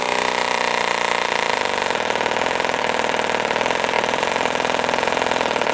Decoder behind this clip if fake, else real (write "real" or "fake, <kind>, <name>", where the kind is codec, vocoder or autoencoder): fake, vocoder, BigVGAN v2